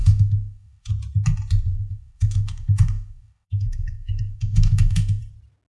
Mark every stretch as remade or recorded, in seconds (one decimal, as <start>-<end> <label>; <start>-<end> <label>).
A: 0.0-0.9 remade; 0.9-1.7 recorded; 1.7-5.2 remade; 5.2-5.8 recorded